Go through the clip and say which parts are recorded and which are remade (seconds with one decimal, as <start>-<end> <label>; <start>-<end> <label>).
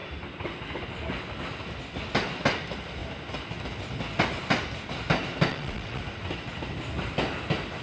0.0-5.5 recorded; 5.5-6.0 remade; 6.0-7.8 recorded